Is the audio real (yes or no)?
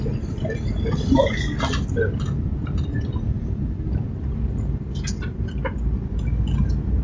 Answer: yes